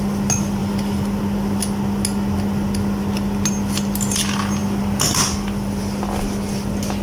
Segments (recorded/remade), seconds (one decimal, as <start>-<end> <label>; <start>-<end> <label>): 0.0-0.6 recorded; 0.6-1.2 remade; 1.2-4.6 recorded; 4.6-5.8 remade; 5.8-7.0 recorded